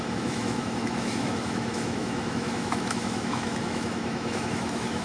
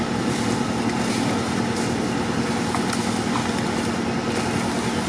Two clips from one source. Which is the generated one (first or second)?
first